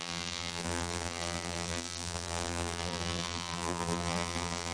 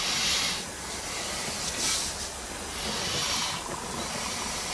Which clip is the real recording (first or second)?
second